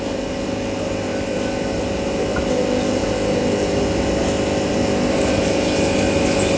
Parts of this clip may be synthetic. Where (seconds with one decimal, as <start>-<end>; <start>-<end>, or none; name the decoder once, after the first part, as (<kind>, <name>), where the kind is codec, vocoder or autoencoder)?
none